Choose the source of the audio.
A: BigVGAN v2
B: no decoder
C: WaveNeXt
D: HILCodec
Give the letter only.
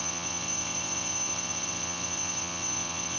C